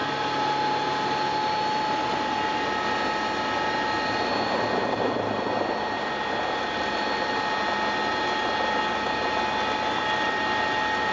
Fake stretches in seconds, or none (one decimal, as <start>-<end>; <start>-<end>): none